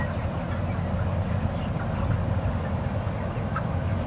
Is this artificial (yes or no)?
no